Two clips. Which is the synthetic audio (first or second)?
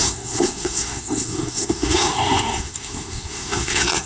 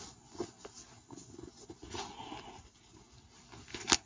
first